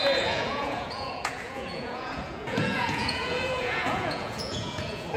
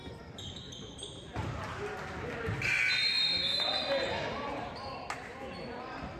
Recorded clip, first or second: second